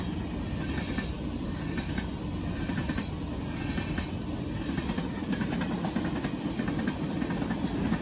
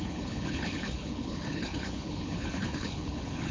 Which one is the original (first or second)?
first